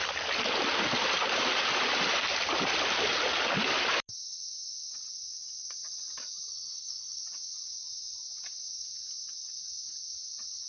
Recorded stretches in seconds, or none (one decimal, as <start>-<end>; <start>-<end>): 0.0-6.5; 7.2-10.7